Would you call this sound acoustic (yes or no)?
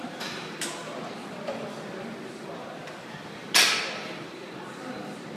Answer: yes